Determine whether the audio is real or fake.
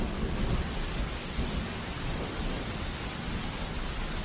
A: real